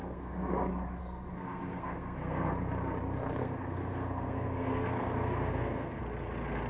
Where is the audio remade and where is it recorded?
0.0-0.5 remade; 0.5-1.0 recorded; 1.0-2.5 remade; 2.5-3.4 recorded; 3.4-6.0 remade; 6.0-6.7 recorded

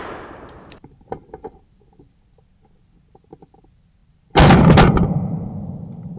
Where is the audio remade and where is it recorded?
0.0-6.2 recorded